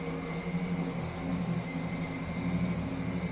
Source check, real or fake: real